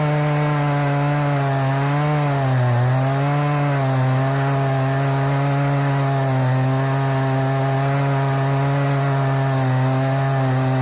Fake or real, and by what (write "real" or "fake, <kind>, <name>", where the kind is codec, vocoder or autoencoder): real